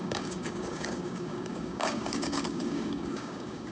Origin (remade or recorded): remade